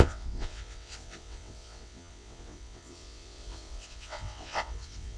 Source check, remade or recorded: remade